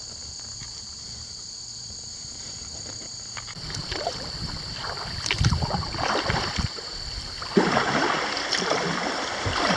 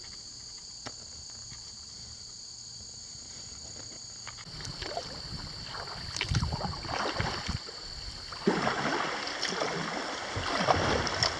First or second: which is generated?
first